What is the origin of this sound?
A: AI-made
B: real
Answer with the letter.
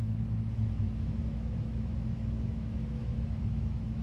A